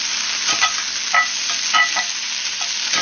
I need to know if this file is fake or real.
real